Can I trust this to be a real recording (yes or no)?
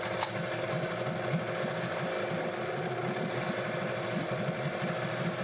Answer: yes